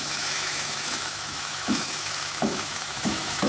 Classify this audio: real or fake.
fake